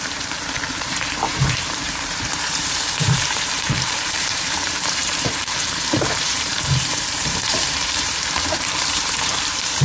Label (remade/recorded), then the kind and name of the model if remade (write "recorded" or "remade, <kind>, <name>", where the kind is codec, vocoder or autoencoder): remade, vocoder, BigVGAN v2